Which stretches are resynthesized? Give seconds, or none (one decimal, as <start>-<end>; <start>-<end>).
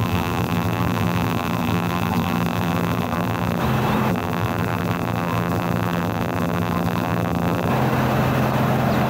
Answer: 0.0-3.6; 4.1-7.7